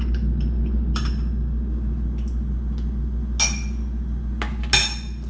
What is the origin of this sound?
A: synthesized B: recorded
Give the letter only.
B